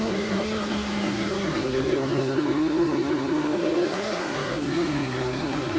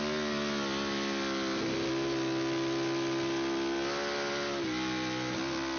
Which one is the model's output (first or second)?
first